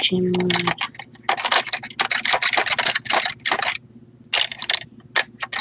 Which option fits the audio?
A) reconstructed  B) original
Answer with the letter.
B